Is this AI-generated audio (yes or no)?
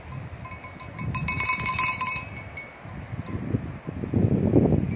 no